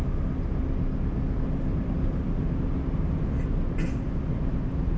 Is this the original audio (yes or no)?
yes